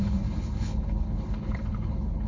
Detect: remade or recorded remade